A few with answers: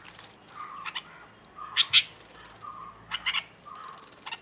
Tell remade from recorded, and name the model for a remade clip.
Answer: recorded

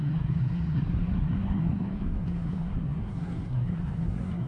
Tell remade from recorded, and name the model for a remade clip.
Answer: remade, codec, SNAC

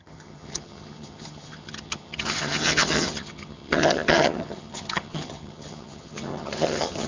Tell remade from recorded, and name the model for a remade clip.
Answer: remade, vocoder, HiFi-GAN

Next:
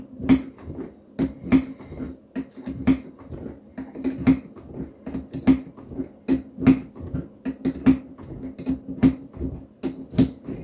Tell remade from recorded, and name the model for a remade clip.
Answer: recorded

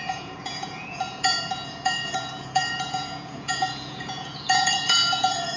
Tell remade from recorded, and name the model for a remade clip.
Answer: remade, vocoder, Vocos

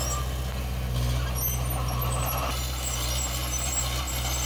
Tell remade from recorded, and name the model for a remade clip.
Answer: recorded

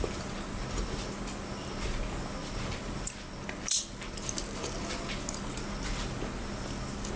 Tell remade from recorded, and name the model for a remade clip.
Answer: recorded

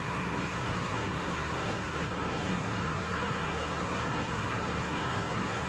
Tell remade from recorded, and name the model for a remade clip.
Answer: remade, codec, SNAC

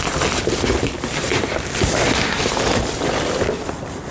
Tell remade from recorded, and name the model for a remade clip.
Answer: recorded